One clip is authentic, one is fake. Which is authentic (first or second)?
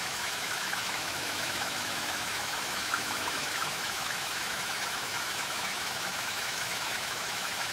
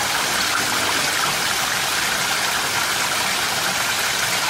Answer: second